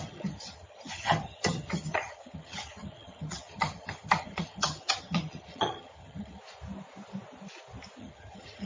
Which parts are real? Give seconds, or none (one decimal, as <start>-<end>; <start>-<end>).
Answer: 6.4-8.0